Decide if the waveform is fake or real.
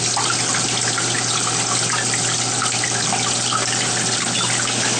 real